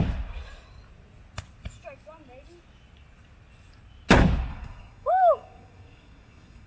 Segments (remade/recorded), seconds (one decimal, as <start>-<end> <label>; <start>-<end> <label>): 0.0-4.5 recorded; 4.5-6.7 remade